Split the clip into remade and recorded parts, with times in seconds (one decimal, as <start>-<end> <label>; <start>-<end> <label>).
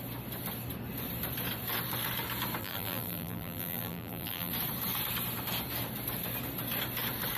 0.0-2.6 recorded; 2.6-4.5 remade; 4.5-7.4 recorded